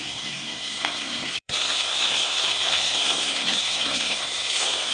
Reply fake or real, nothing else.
fake